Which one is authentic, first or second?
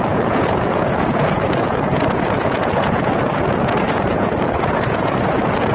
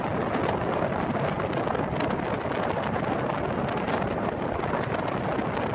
second